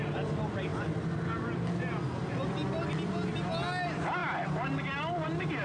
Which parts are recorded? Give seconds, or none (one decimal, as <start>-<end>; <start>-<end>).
0.0-5.6

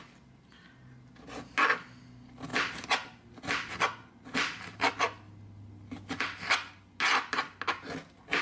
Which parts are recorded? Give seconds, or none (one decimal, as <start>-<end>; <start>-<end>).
0.0-8.4

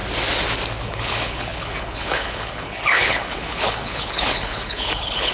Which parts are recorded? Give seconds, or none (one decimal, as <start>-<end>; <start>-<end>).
0.0-0.8

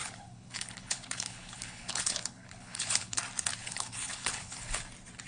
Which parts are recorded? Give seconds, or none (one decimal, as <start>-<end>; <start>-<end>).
3.2-3.6; 4.8-5.3